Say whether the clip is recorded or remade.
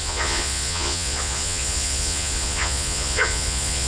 remade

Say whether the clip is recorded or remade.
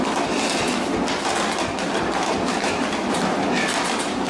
recorded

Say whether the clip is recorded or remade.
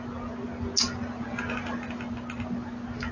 recorded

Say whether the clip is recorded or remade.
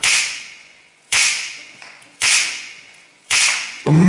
remade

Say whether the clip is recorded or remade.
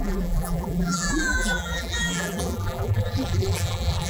remade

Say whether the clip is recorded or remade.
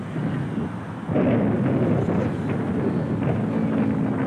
recorded